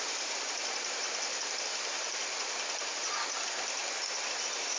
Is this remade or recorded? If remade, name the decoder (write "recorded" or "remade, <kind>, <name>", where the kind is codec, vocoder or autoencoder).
recorded